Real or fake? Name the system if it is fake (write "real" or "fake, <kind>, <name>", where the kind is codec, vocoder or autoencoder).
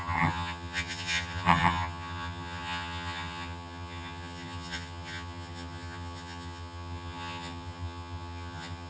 fake, vocoder, HiFi-GAN